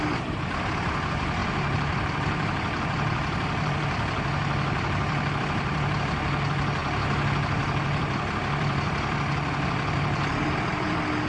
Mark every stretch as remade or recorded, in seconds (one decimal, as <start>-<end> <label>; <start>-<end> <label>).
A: 0.0-6.8 remade; 6.8-7.4 recorded; 7.4-11.3 remade